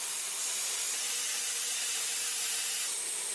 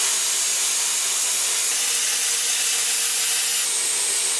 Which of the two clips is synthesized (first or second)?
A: first